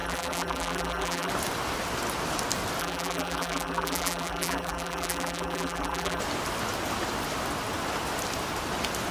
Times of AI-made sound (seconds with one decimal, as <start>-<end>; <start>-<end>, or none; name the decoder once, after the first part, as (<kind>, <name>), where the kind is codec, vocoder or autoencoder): 0.0-1.3 (vocoder, BigVGAN v2); 2.8-6.2